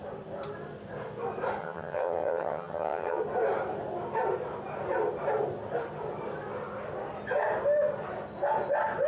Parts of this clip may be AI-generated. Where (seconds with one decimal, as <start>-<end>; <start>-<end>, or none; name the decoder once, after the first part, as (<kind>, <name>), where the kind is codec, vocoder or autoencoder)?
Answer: 1.6-3.2 (vocoder, HiFi-GAN)